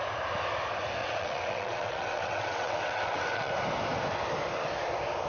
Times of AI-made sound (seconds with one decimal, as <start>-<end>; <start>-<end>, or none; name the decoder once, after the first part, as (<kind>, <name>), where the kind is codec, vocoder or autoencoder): 1.0-3.5 (vocoder, WaveNeXt)